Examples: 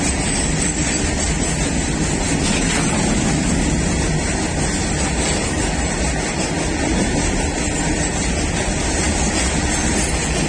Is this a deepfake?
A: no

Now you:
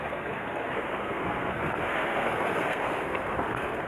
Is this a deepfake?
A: yes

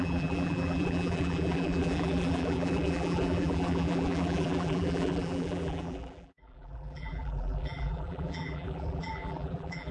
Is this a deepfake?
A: yes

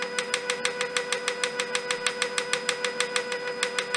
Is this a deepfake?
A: no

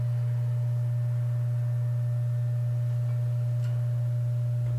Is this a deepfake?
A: no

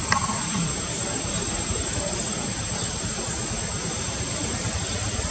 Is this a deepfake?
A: no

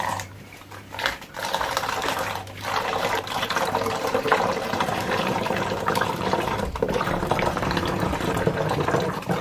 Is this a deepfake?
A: yes